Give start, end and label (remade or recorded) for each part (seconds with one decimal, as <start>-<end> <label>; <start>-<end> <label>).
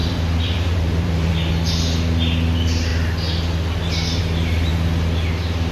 0.0-1.3 remade; 1.3-5.7 recorded